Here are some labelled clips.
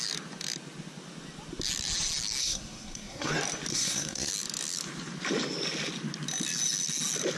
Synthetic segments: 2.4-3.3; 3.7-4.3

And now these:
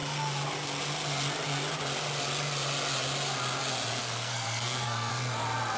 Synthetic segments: 4.0-5.1

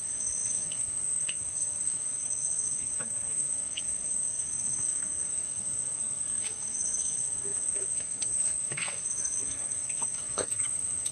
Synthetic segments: 0.0-11.1